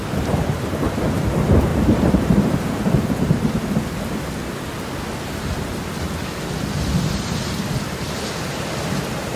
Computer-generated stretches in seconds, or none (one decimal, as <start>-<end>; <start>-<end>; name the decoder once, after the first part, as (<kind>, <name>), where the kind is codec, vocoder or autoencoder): 0.0-0.7 (vocoder, BigVGAN v2); 1.7-3.6